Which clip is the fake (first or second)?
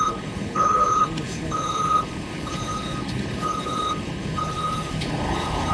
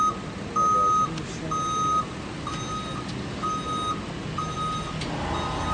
first